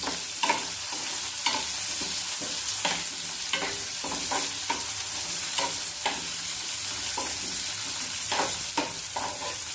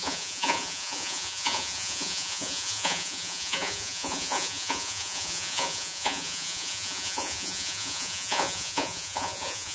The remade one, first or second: second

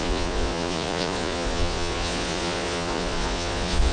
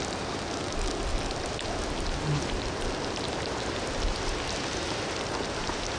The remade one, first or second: first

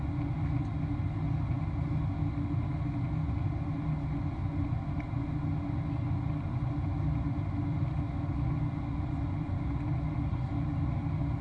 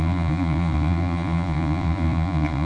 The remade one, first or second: second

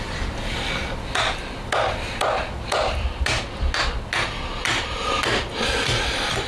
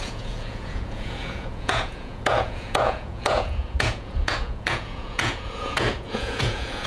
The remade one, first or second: second